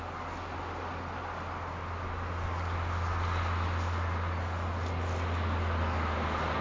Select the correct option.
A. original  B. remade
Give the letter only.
A